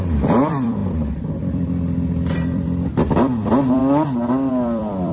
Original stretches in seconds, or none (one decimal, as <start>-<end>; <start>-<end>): 3.8-4.5